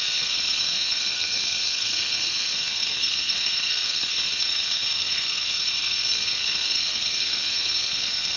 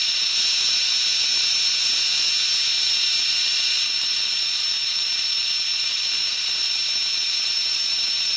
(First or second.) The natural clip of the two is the second